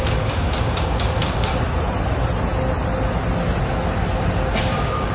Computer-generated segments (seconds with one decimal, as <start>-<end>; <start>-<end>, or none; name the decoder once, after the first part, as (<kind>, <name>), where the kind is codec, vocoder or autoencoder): 0.0-1.5 (codec, DAC); 4.6-5.1